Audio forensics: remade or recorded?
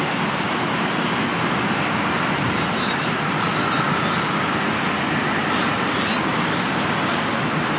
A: recorded